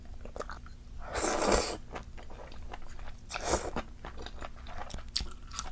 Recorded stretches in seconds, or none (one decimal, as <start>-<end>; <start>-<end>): 0.0-5.7